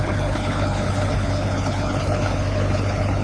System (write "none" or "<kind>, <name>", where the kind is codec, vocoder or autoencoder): codec, HILCodec